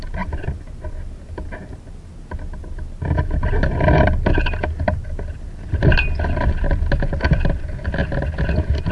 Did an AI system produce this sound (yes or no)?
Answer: no